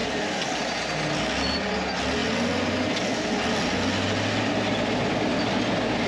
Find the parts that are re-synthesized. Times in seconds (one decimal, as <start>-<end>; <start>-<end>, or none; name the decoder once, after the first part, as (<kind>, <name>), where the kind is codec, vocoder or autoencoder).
none